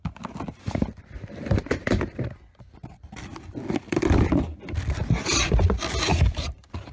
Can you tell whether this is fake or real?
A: fake